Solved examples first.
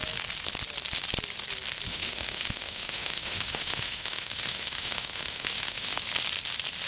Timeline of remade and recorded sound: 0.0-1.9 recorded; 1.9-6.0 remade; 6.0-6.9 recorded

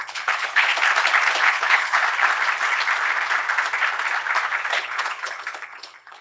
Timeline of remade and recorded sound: 0.0-0.7 remade; 0.7-1.4 recorded; 1.4-2.0 remade; 2.0-4.7 recorded; 4.7-6.2 remade

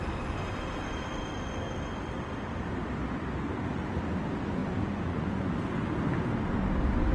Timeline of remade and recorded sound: 0.0-4.6 recorded; 4.6-5.5 remade; 5.5-7.1 recorded

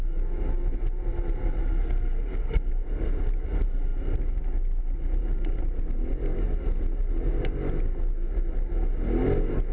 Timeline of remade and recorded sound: 0.0-1.8 recorded; 1.8-2.7 remade; 2.7-9.7 recorded